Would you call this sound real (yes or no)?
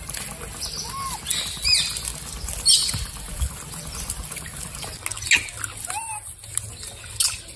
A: yes